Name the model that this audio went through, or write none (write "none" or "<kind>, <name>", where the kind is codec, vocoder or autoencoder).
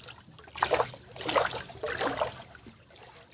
none